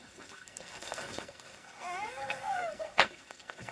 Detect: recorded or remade remade